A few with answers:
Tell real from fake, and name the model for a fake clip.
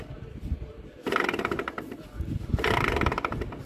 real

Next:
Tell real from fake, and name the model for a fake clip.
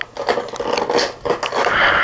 real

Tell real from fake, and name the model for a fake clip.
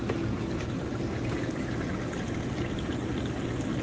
real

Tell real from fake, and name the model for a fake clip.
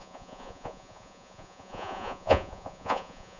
fake, vocoder, Vocos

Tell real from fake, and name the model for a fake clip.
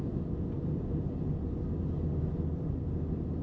real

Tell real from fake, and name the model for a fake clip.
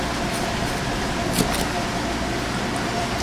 real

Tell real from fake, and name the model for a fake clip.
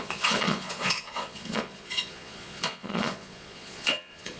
fake, vocoder, Vocos